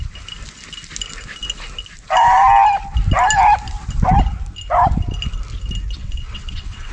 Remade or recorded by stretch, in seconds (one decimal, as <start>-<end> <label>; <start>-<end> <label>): 0.0-6.0 recorded; 6.0-6.9 remade